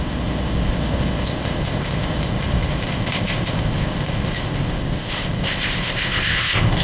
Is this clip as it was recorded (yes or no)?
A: no